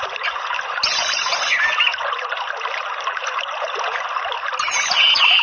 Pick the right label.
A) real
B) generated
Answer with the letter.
A